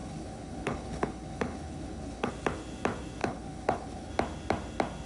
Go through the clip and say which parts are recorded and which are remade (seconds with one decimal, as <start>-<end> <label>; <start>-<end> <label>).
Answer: 0.0-2.3 remade; 2.3-3.2 recorded; 3.2-4.1 remade; 4.1-5.1 recorded